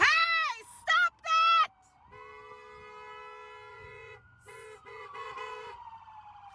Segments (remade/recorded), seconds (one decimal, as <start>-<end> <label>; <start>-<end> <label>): 0.0-3.7 recorded; 3.7-5.9 remade; 5.9-6.5 recorded